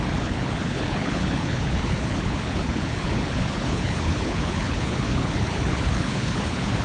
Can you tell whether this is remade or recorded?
remade